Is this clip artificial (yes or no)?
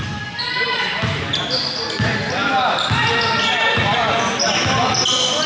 no